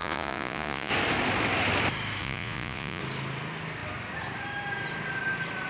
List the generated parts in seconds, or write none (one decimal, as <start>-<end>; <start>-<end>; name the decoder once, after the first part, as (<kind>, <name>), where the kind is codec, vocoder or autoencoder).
0.0-0.9 (vocoder, Vocos); 2.2-3.0